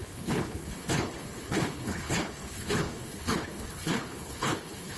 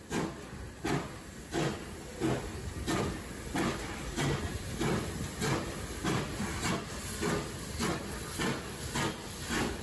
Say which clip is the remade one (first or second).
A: first